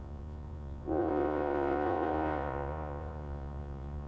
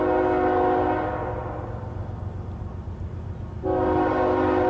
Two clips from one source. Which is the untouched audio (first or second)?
second